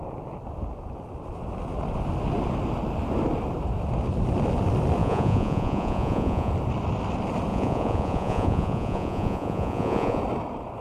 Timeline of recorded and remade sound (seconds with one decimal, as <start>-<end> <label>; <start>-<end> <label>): 0.0-5.0 recorded; 5.0-6.5 remade; 6.5-7.5 recorded; 7.5-10.2 remade; 10.2-10.8 recorded